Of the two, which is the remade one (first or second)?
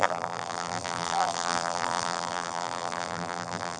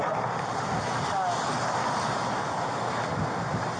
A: first